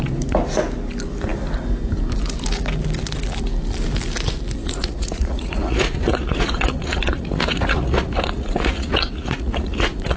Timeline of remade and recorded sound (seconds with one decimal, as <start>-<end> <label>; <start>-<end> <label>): 0.0-4.6 recorded; 4.6-10.2 remade